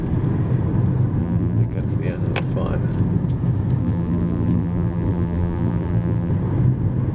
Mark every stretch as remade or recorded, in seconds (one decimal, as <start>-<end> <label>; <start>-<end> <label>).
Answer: 0.0-1.2 recorded; 1.2-1.8 remade; 1.8-3.8 recorded; 3.8-6.3 remade; 6.3-7.1 recorded